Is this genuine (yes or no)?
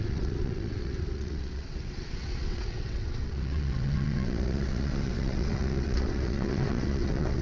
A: no